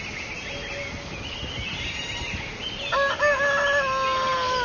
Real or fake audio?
real